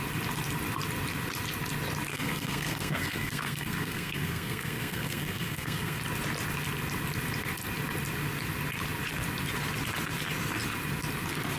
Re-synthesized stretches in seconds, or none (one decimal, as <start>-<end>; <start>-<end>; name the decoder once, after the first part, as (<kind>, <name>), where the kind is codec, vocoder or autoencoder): 2.1-6.0 (codec, SNAC)